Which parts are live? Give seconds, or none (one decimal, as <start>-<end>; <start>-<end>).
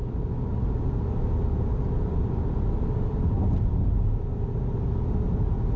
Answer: 0.0-5.8